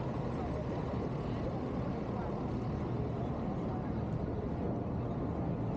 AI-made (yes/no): no